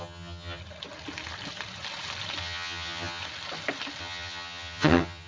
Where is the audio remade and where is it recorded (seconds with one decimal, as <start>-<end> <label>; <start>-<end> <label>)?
0.0-0.6 remade; 0.6-2.4 recorded; 2.4-3.2 remade; 3.2-4.0 recorded; 4.0-5.3 remade